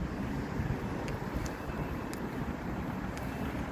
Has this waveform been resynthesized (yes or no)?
no